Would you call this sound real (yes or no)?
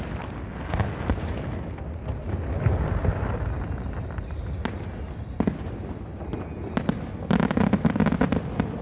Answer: yes